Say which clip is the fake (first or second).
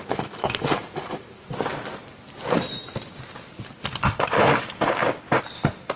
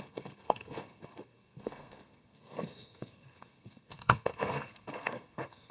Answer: second